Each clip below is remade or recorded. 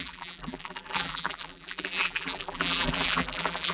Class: remade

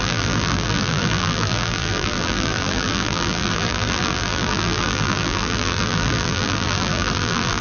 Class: remade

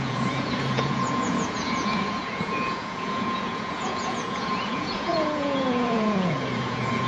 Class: remade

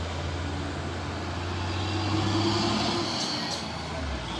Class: recorded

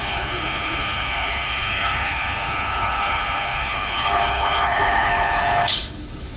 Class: remade